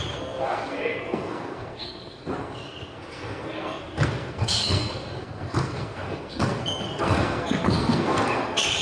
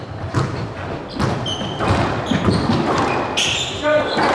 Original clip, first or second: second